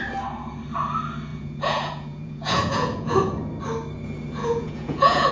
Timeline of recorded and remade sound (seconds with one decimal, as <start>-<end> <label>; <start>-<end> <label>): 0.0-1.3 recorded; 1.3-3.6 remade; 3.6-4.4 recorded; 4.4-5.3 remade